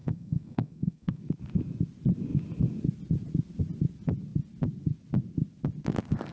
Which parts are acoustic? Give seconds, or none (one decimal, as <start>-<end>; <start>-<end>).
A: 1.2-6.3